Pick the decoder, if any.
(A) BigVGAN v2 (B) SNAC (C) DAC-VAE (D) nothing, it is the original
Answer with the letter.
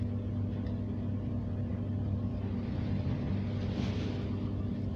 D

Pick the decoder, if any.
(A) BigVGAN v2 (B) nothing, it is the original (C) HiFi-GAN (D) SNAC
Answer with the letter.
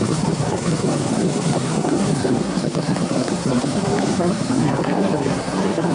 D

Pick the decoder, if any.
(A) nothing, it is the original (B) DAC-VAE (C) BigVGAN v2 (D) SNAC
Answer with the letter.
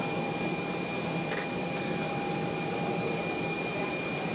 A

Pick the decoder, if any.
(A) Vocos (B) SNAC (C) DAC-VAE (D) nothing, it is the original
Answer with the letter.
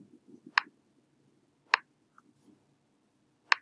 D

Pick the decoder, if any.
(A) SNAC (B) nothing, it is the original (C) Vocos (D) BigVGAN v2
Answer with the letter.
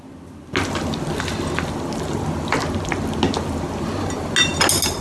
B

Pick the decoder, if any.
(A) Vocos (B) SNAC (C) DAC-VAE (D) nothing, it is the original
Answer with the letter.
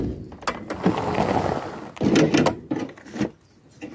D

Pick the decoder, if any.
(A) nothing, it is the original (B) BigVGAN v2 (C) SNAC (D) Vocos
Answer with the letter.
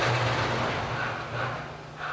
A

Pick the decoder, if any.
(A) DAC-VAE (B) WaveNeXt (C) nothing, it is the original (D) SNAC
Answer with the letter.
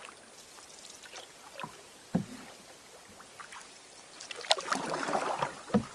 C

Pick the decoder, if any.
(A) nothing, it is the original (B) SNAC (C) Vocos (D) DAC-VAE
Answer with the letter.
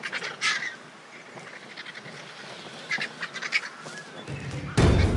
A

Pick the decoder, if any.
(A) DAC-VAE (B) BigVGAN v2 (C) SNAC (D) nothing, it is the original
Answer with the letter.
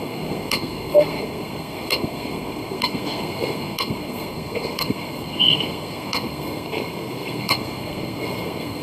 C